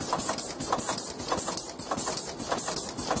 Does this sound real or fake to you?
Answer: real